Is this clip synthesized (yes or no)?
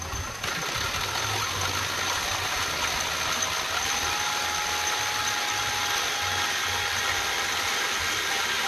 no